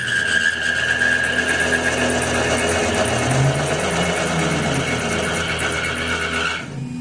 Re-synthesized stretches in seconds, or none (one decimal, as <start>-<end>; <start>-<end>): none